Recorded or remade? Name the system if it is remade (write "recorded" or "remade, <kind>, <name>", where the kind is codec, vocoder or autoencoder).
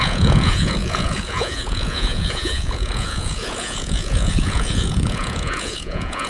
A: remade, vocoder, Vocos